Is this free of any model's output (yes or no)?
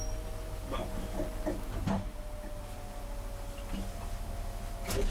yes